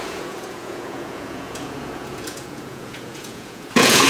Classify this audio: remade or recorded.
remade